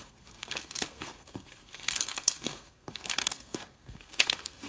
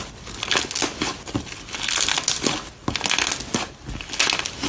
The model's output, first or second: first